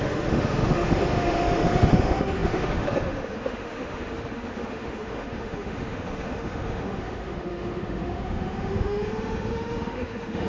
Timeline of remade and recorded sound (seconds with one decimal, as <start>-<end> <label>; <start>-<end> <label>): 0.0-10.5 remade